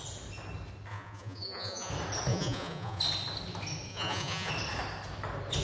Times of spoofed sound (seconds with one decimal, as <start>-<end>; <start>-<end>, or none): 0.9-1.9; 2.3-3.0; 3.9-4.5